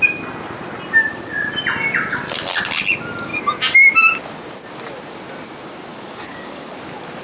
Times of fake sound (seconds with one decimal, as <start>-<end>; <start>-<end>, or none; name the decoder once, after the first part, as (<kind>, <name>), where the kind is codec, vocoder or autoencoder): 5.9-6.7 (codec, DAC)